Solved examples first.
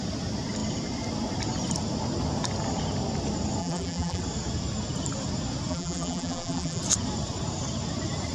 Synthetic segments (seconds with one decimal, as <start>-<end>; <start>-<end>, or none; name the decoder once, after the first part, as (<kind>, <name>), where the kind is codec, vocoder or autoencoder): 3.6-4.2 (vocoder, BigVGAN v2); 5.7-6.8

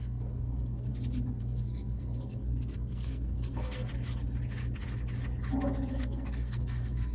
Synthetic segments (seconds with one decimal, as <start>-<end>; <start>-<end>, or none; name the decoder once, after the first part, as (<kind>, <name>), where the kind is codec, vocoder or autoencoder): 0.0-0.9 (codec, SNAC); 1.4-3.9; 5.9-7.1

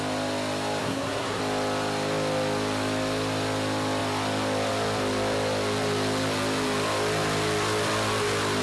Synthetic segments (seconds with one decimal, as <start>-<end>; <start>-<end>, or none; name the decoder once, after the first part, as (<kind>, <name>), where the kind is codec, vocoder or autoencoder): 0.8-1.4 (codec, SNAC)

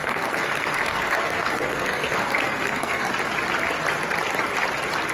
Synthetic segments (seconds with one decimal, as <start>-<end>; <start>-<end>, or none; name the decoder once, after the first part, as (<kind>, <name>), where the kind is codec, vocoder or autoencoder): 0.0-3.1 (codec, SNAC)

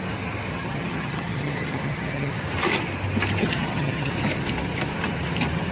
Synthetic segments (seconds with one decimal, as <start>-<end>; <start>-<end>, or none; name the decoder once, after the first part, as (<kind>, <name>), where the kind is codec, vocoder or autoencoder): 0.5-2.3 (vocoder, HiFi-GAN); 3.4-4.1